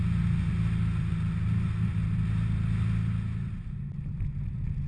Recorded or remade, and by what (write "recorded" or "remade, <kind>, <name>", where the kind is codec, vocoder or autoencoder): recorded